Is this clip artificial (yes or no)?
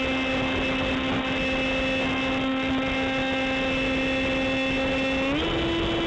no